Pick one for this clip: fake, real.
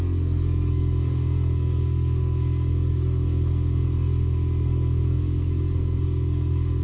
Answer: fake